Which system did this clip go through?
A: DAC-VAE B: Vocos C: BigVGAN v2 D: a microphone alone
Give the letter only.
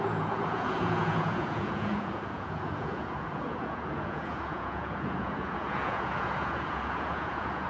B